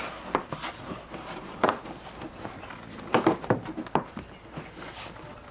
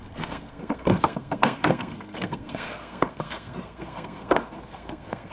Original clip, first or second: first